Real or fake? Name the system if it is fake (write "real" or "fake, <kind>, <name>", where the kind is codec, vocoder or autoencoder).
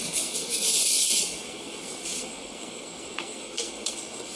fake, codec, SNAC